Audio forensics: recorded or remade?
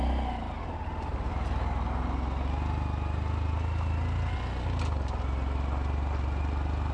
recorded